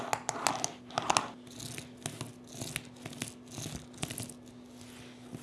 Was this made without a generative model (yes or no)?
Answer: yes